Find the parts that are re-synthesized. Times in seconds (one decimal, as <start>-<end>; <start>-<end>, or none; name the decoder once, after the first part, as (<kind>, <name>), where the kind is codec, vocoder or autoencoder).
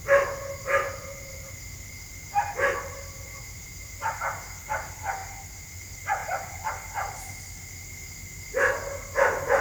none